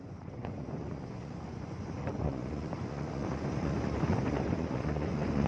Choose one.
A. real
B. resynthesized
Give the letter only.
B